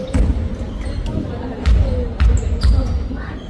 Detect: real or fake real